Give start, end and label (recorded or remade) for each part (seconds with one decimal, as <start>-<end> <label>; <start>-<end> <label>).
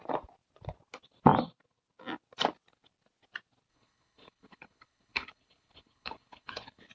0.0-3.7 recorded; 3.7-6.9 remade